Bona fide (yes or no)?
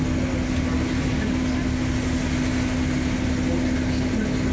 yes